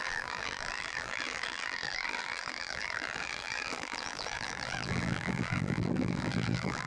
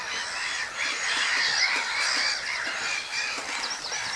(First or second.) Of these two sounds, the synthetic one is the first